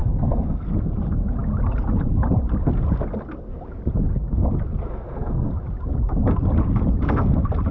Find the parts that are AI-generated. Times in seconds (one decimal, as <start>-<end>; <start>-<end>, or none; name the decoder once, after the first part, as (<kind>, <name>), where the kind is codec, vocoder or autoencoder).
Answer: 0.0-0.6 (codec, SNAC); 4.9-5.5